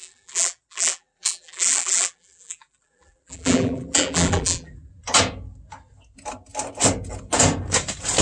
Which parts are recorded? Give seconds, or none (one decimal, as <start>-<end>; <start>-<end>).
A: 4.9-8.2